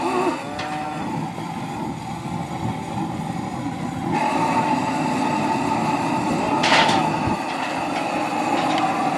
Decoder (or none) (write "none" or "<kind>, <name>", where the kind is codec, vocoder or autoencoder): none